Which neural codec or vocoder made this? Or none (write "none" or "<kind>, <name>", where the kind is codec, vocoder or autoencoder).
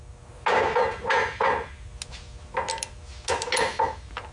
none